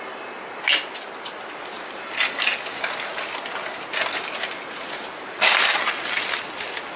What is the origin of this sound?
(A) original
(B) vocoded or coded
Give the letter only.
A